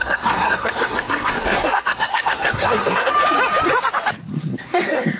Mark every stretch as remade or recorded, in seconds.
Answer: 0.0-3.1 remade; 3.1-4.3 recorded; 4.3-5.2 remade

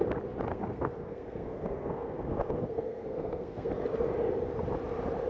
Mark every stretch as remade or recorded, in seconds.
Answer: 0.0-0.5 recorded; 0.5-3.7 remade; 3.7-5.3 recorded

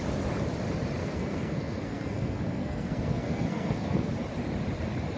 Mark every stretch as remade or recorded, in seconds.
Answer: 0.0-1.0 recorded; 1.0-4.1 remade; 4.1-5.2 recorded

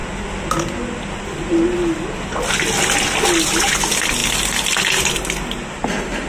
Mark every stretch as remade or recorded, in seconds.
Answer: 0.0-6.3 recorded

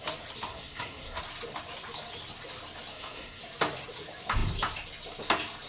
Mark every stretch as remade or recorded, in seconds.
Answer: 0.0-0.5 recorded; 0.5-1.2 remade; 1.2-2.9 recorded; 2.9-3.4 remade; 3.4-5.7 recorded

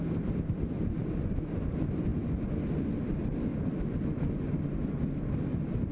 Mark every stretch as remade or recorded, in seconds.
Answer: 0.0-5.9 recorded